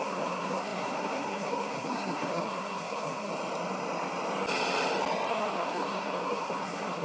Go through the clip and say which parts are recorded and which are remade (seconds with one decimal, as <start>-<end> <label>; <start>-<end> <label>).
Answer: 0.0-3.3 remade; 3.3-5.3 recorded; 5.3-7.0 remade